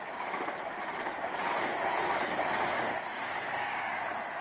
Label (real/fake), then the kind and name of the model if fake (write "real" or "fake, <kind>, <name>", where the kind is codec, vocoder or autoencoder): real